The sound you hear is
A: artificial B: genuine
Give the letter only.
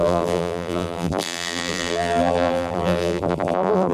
A